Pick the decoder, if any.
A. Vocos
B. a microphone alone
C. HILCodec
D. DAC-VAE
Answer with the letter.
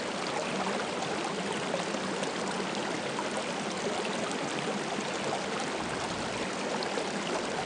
B